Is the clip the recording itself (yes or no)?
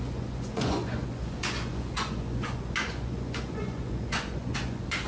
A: no